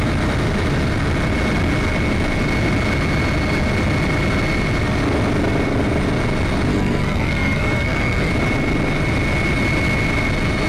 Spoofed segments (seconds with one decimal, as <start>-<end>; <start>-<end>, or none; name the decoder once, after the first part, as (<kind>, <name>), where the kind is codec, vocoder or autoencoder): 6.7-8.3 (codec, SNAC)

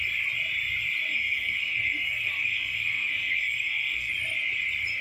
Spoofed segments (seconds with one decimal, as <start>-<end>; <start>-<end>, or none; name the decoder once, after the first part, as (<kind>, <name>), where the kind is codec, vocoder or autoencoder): 1.1-4.1 (codec, SNAC)

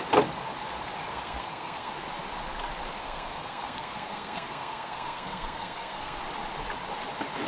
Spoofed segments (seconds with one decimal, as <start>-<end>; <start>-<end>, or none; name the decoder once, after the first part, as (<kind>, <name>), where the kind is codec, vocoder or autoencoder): 1.1-1.9 (codec, SNAC); 3.0-6.2

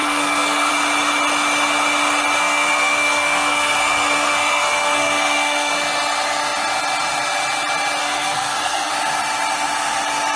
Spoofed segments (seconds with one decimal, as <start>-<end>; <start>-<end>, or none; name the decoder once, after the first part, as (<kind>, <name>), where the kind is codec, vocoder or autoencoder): 0.0-0.7 (codec, SNAC); 2.4-5.7; 8.0-8.9

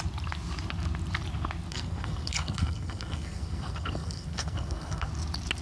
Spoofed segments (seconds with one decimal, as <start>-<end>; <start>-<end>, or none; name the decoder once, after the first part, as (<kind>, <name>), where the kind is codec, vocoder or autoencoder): 1.7-5.1 (codec, SNAC)